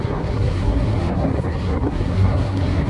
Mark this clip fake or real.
fake